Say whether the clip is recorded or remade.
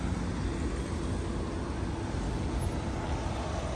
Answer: recorded